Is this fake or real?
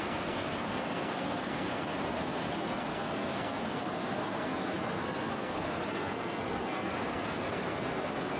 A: fake